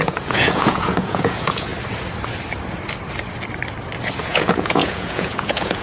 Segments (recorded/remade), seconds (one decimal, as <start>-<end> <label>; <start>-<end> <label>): 0.0-1.7 remade; 1.7-4.2 recorded; 4.2-5.8 remade